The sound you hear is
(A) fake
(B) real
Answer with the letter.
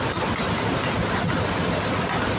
B